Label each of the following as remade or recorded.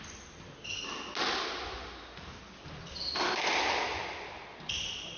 recorded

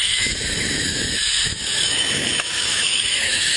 remade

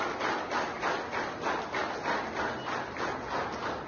recorded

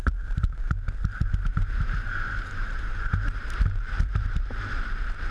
remade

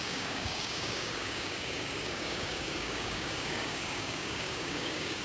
remade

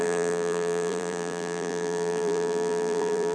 remade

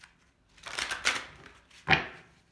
recorded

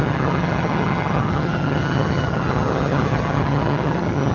remade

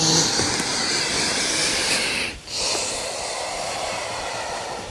recorded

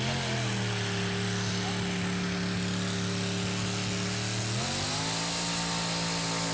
recorded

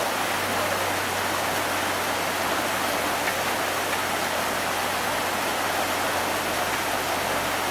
recorded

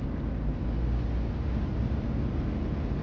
recorded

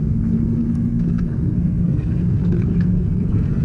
remade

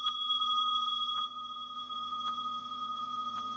remade